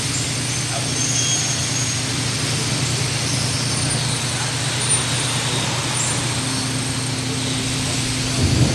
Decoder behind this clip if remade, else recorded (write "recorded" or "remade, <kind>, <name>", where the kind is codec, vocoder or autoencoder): recorded